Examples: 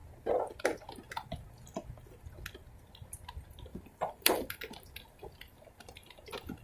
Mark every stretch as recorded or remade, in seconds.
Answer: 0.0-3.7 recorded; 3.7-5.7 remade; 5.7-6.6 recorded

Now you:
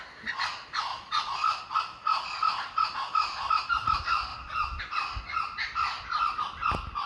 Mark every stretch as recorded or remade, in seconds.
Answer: 0.0-0.9 recorded; 0.9-1.8 remade; 1.8-4.3 recorded; 4.3-4.8 remade; 4.8-7.1 recorded

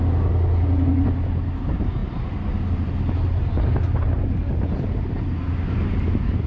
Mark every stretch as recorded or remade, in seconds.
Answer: 0.0-6.5 recorded

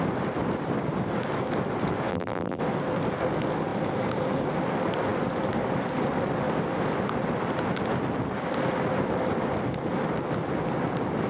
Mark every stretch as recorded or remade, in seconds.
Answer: 0.0-2.1 recorded; 2.1-2.6 remade; 2.6-11.3 recorded